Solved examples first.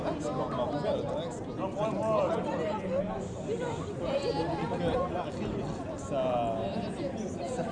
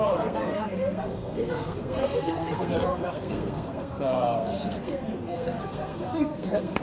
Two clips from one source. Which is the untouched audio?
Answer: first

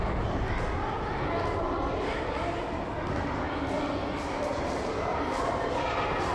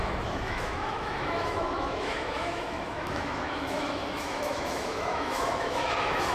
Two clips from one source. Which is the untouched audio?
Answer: first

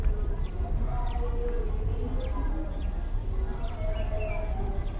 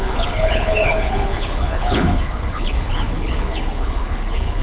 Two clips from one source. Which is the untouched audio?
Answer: first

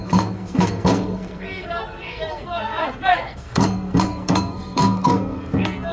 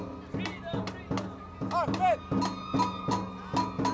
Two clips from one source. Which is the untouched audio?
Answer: second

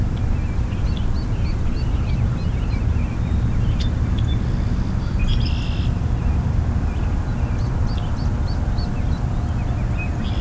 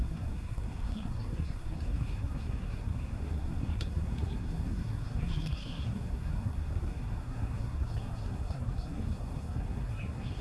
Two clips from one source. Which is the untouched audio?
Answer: first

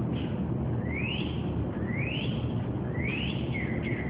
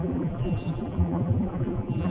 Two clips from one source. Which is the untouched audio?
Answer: first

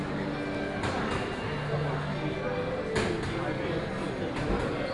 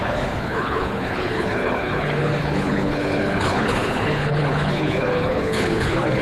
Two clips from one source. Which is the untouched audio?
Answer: first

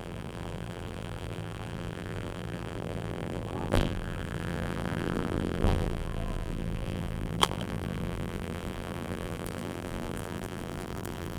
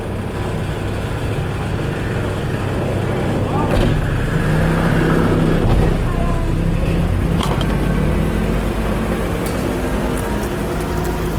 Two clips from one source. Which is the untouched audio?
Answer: second